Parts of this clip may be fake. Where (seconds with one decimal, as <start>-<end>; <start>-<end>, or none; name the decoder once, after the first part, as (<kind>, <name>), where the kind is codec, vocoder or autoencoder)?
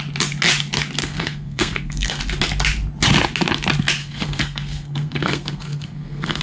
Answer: 1.0-2.2 (codec, SNAC); 4.0-6.4